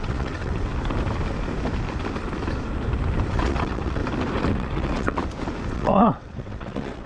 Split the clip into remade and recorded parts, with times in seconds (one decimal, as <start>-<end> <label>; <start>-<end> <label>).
0.0-0.7 remade; 0.7-3.3 recorded; 3.3-4.0 remade; 4.0-4.5 recorded; 4.5-5.2 remade; 5.2-5.7 recorded; 5.7-7.1 remade